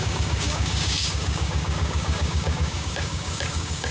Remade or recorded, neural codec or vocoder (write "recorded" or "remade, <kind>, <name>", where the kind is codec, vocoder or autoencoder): remade, codec, DAC